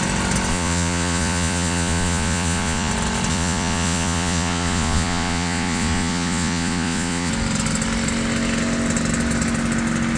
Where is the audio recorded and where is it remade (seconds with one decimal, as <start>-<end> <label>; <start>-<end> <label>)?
0.0-0.5 recorded; 0.5-2.9 remade; 2.9-3.3 recorded; 3.3-7.3 remade; 7.3-10.2 recorded